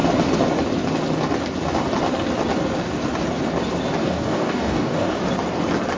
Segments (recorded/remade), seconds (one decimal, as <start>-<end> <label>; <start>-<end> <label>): 0.0-4.0 recorded; 4.0-5.2 remade; 5.2-6.0 recorded